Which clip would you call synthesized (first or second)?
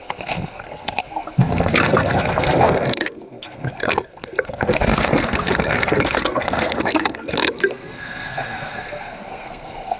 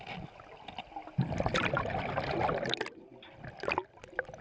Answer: first